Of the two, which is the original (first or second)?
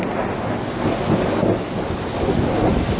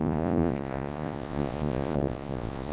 first